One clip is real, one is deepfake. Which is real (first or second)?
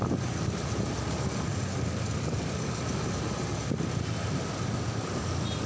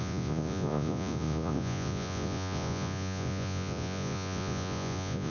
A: first